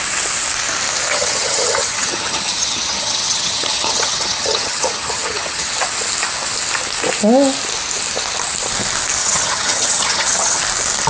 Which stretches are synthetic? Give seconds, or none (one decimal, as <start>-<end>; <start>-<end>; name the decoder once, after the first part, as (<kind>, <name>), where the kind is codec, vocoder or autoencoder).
1.1-5.7 (vocoder, HiFi-GAN); 9.2-10.6